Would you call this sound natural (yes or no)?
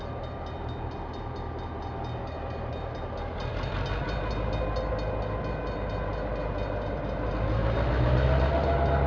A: yes